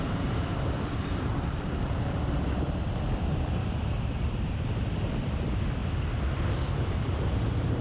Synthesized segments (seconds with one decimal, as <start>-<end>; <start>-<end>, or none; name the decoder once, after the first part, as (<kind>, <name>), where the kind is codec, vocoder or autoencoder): 0.0-5.8 (vocoder, BigVGAN v2); 6.5-7.8